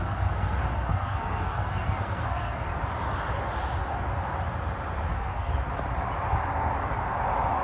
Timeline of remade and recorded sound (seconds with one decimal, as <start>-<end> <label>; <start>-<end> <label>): 0.0-2.7 remade; 2.7-5.1 recorded; 5.1-5.5 remade; 5.5-7.6 recorded